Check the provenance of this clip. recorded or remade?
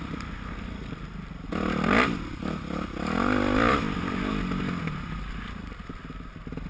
recorded